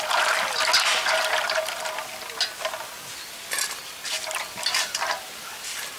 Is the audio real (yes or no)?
yes